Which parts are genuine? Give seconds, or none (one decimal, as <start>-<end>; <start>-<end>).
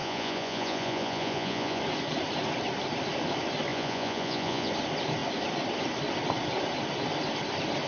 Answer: 1.8-3.7; 4.7-7.9